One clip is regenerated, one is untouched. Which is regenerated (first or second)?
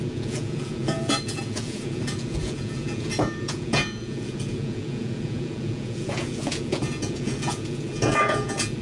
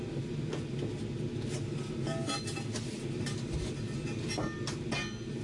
first